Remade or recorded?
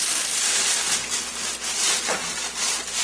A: recorded